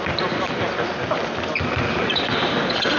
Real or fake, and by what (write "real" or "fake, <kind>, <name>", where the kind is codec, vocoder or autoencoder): real